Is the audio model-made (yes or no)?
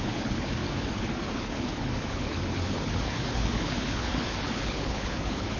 yes